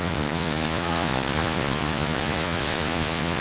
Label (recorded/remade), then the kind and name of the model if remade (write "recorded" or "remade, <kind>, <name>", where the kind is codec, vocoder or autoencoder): remade, vocoder, Vocos